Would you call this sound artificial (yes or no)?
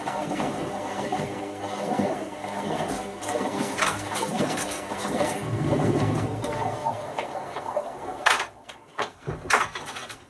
yes